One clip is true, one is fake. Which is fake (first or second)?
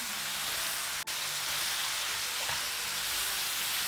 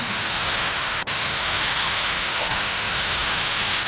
second